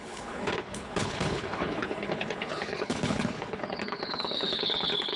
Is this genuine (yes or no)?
no